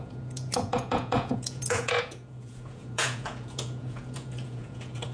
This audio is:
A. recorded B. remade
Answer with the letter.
B